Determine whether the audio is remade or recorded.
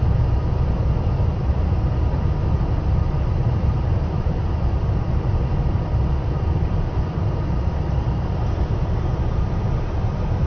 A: remade